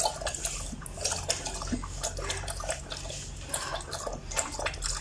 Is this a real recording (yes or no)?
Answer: yes